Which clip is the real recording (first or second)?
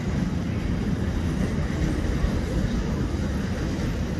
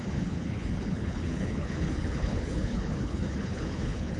first